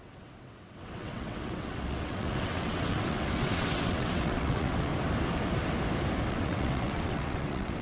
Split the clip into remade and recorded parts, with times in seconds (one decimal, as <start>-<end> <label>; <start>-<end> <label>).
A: 0.0-4.9 remade; 4.9-6.3 recorded; 6.3-7.8 remade

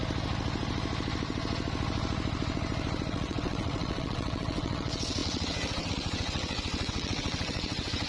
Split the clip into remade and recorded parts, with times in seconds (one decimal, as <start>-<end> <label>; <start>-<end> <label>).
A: 0.0-3.1 recorded; 3.1-8.1 remade

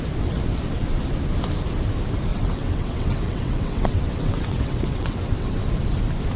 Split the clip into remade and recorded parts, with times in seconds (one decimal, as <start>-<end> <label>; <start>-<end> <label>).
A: 0.0-2.3 recorded; 2.3-5.6 remade; 5.6-6.4 recorded

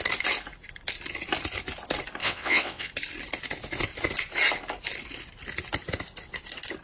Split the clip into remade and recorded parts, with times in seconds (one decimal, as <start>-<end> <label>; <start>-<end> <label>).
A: 0.0-2.2 recorded; 2.2-2.9 remade; 2.9-6.8 recorded

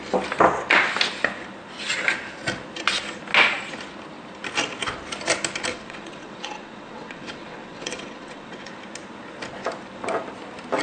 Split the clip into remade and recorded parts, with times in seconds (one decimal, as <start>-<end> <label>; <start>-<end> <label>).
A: 0.0-5.7 recorded; 5.7-8.7 remade; 8.7-10.8 recorded

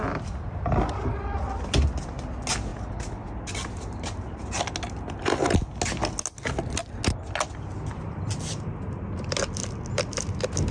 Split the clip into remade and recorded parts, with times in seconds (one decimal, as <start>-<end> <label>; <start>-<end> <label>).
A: 0.0-10.7 recorded

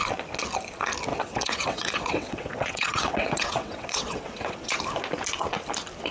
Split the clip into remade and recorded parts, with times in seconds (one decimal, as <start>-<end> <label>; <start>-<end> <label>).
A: 0.0-1.1 recorded; 1.1-4.8 remade; 4.8-6.1 recorded

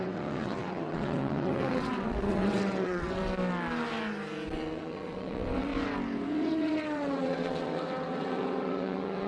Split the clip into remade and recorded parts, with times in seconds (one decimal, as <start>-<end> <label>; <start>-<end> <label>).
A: 0.0-3.2 remade; 3.2-4.5 recorded; 4.5-5.7 remade; 5.7-6.3 recorded; 6.3-9.3 remade